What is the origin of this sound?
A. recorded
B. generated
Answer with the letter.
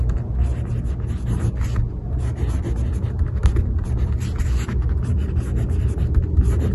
A